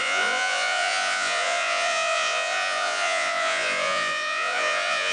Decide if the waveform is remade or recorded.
remade